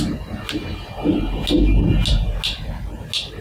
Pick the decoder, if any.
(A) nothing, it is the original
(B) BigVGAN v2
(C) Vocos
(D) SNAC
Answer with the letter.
A